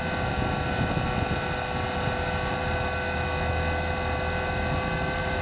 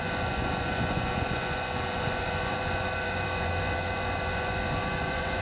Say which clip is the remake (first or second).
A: second